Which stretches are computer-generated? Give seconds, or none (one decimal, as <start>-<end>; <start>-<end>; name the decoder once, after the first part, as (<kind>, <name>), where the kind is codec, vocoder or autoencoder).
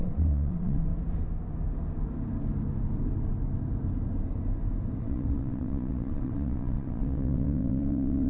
0.0-0.9 (vocoder, WaveNeXt); 5.0-8.3